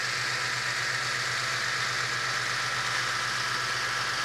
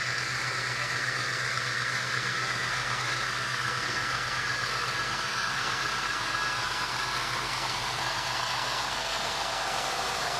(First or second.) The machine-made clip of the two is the second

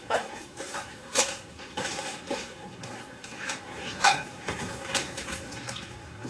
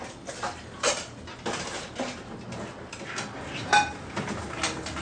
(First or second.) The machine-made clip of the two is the first